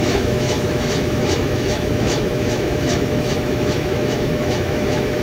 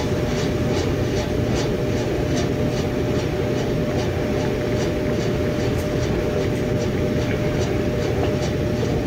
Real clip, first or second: second